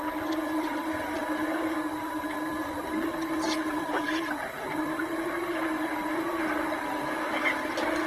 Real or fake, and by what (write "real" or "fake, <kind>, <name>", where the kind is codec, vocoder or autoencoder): fake, vocoder, BigVGAN v2